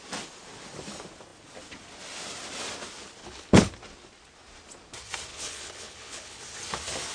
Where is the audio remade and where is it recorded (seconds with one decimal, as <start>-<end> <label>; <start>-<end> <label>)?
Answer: 0.0-3.2 recorded; 3.2-3.7 remade; 3.7-5.3 recorded; 5.3-6.4 remade; 6.4-7.1 recorded